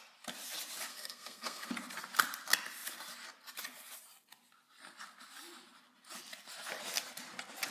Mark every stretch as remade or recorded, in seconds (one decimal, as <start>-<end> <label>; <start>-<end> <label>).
0.0-0.9 recorded; 0.9-1.7 remade; 1.7-7.7 recorded